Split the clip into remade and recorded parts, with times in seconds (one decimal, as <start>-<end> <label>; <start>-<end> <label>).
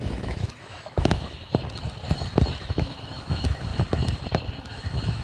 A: 0.0-1.5 remade; 1.5-2.6 recorded; 2.6-3.7 remade; 3.7-4.6 recorded; 4.6-5.2 remade